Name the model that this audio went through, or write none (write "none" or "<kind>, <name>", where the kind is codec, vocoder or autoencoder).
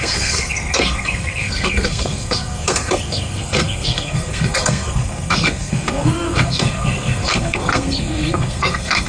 codec, SNAC